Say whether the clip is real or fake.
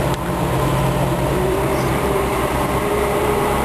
fake